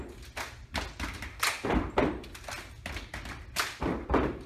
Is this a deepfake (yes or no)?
no